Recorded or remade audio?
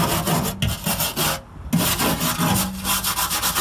recorded